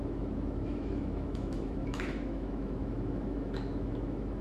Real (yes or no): no